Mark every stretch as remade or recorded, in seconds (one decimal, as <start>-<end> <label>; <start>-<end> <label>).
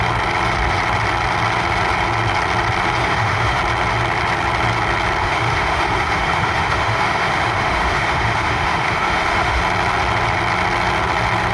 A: 0.0-3.0 recorded; 3.0-3.6 remade; 3.6-5.2 recorded; 5.2-9.6 remade; 9.6-11.5 recorded